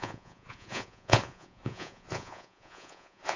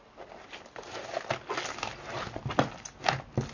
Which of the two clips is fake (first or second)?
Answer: first